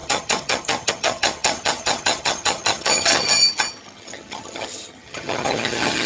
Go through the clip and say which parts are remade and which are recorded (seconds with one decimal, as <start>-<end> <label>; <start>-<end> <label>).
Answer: 0.0-6.1 remade